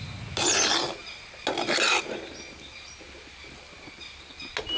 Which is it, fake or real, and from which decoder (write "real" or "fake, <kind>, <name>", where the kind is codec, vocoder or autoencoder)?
real